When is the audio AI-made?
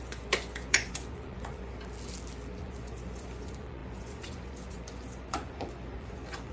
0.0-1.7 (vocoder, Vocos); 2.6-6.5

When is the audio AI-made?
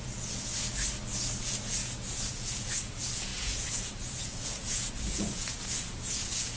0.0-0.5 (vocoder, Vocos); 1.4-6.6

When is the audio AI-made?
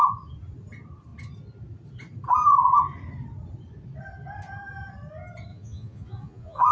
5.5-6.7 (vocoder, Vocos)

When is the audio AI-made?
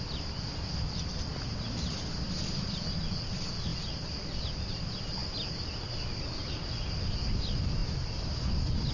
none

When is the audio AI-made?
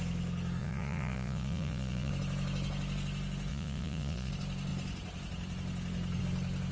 0.6-2.1 (vocoder, Vocos); 3.5-4.3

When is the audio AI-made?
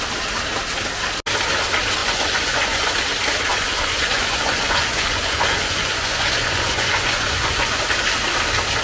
2.0-2.9 (vocoder, Vocos); 3.5-7.8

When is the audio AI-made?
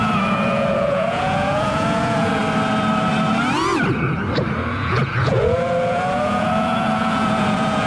0.0-2.4 (vocoder, Vocos); 4.7-7.9